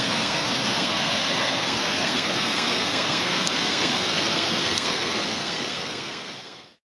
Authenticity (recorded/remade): remade